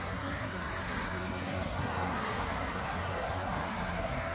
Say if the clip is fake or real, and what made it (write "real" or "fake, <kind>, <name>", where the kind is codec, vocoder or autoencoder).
fake, codec, SNAC